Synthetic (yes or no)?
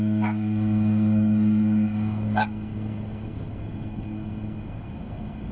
yes